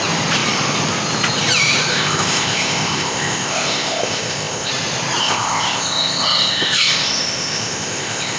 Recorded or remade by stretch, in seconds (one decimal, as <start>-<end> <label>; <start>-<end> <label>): 0.0-1.9 recorded; 1.9-4.7 remade; 4.7-5.2 recorded; 5.2-8.4 remade